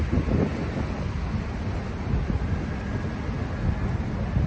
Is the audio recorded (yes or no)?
yes